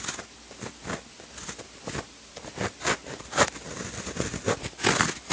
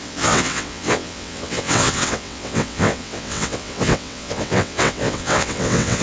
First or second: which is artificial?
second